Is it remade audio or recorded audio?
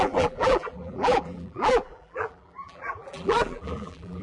remade